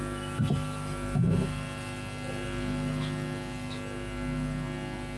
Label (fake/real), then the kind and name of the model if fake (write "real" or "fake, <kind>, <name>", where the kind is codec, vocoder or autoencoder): real